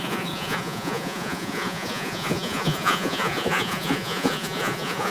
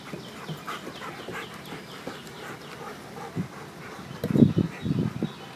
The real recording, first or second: second